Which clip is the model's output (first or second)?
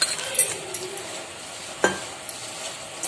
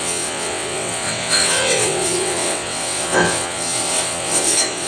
second